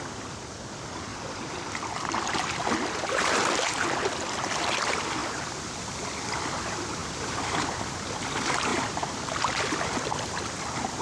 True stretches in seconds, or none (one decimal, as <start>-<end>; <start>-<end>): none